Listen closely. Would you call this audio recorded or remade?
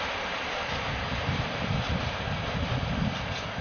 remade